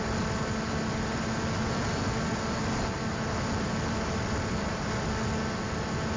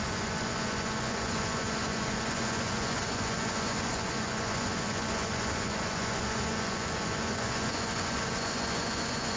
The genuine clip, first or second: first